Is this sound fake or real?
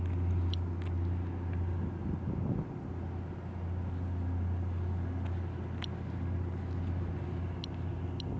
real